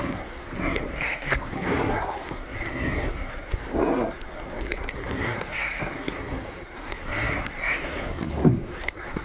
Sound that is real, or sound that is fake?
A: fake